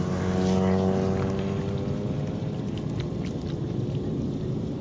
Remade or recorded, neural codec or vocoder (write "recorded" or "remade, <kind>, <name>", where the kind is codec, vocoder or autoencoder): recorded